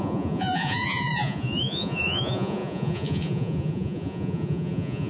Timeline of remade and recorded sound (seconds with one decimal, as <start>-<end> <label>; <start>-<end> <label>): 0.0-5.1 remade